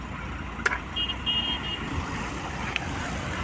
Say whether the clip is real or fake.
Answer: fake